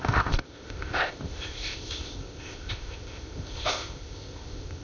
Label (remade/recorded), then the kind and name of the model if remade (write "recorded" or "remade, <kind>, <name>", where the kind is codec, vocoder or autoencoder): remade, codec, ZipCodec